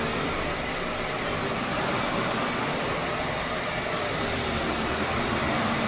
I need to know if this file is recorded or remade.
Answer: recorded